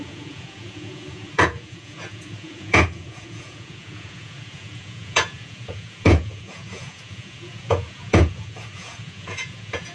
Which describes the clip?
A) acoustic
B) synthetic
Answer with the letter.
B